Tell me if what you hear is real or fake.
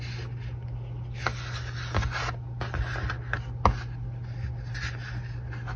real